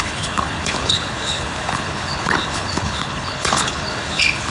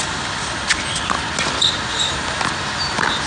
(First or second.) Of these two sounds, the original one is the second